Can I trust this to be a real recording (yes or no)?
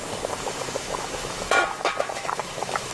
no